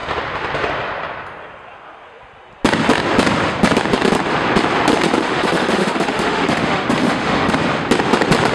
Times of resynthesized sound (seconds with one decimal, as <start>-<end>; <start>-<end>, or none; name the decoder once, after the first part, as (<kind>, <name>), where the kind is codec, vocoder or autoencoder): 5.2-7.5 (autoencoder, DAC-VAE)